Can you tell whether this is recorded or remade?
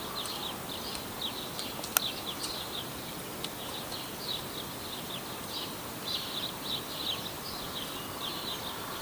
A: recorded